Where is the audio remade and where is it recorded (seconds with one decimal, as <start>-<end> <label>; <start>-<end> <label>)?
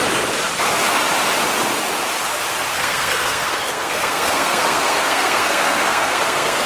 0.0-2.7 recorded; 2.7-6.7 remade